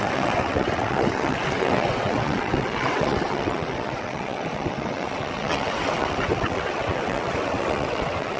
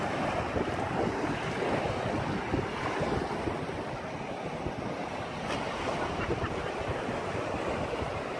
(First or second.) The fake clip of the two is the first